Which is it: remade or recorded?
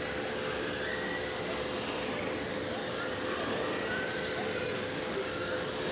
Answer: recorded